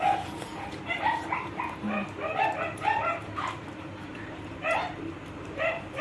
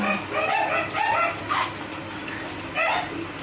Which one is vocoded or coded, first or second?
first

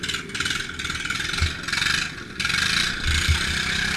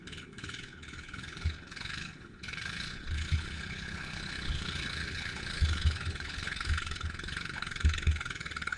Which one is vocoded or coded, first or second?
second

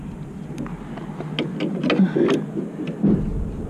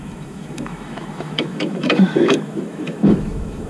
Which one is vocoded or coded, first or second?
second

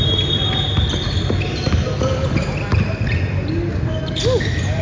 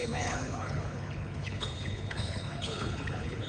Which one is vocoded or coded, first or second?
second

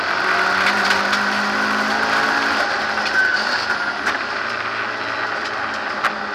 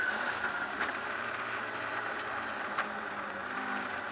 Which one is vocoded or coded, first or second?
second